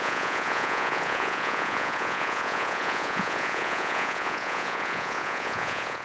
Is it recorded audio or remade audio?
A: remade